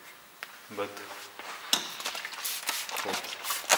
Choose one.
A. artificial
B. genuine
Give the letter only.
B